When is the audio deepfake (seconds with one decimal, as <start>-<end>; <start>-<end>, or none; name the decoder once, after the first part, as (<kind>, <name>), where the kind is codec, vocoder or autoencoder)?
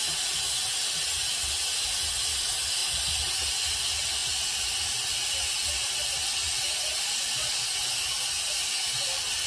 2.8-3.3 (vocoder, BigVGAN v2)